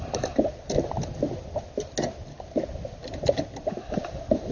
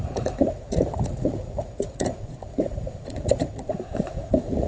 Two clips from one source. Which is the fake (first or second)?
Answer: second